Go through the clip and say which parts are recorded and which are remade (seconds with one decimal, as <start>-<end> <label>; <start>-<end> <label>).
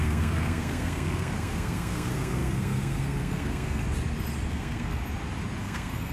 0.0-3.8 remade; 3.8-4.5 recorded; 4.5-5.0 remade; 5.0-5.6 recorded; 5.6-6.1 remade